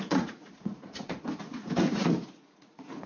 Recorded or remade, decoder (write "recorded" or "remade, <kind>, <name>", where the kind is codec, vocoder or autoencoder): remade, vocoder, Vocos